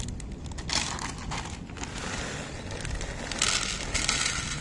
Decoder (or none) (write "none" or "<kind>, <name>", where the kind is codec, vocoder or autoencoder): none